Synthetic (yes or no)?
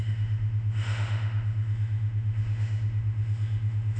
yes